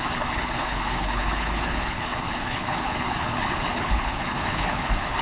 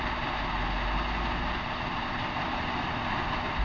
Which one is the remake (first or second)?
first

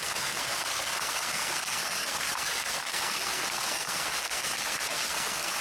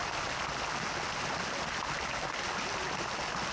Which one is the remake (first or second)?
first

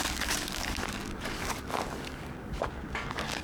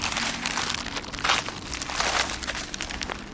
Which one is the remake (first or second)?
first